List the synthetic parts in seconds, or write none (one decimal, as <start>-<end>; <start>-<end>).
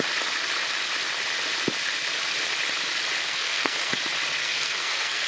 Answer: 3.2-4.0; 4.4-5.3